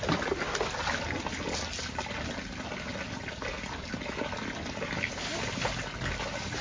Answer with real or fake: real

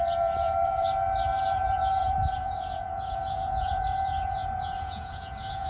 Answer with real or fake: fake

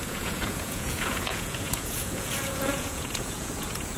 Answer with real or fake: fake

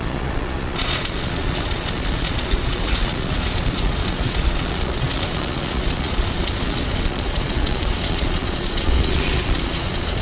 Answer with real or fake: fake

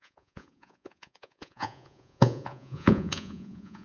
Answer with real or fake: fake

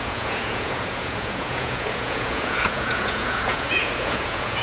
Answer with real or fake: fake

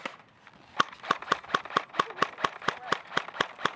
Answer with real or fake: real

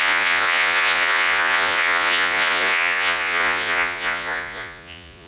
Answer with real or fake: fake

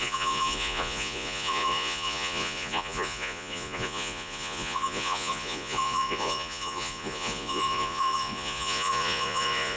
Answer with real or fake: fake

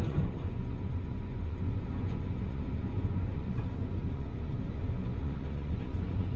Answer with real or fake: fake